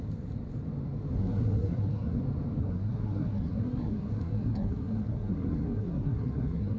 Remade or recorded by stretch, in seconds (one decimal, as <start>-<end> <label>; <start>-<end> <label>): 0.0-1.2 recorded; 1.2-2.2 remade; 2.2-2.6 recorded; 2.6-6.8 remade